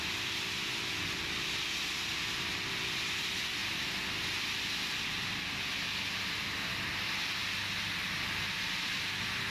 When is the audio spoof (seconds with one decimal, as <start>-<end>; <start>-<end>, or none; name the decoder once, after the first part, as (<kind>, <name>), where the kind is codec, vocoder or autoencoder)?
none